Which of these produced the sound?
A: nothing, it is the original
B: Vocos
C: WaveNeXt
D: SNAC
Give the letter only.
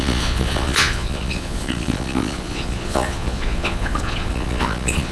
B